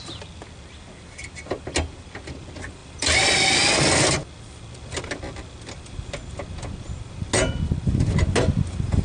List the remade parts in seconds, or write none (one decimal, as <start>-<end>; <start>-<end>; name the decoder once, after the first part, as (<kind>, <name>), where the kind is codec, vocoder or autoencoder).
none